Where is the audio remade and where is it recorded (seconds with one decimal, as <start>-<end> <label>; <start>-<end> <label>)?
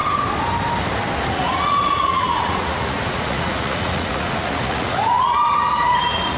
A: 0.0-1.3 recorded; 1.3-6.4 remade